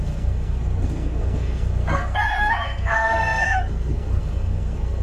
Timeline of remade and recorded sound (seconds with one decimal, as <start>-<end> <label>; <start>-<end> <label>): 0.0-5.0 remade